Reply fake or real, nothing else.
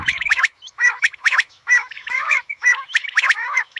fake